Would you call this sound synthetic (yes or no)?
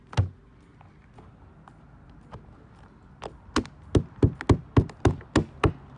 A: no